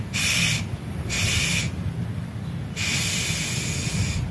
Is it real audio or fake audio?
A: real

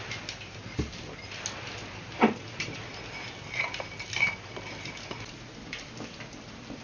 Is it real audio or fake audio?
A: real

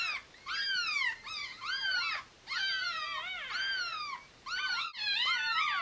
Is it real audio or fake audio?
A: real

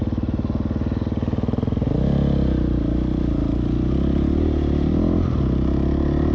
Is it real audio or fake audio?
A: real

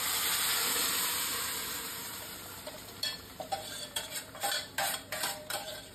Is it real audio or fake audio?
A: fake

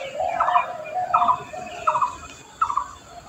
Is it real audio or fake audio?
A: real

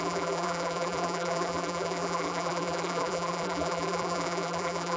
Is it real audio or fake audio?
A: fake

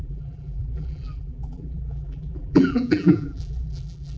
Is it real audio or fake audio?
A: fake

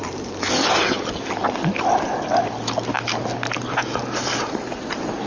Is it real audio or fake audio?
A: real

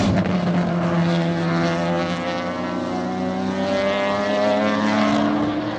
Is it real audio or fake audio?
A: real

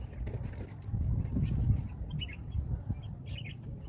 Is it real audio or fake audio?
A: real